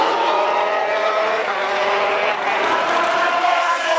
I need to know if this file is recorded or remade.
remade